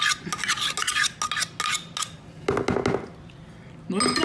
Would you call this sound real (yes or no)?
yes